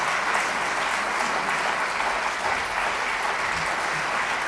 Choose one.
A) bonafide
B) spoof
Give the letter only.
A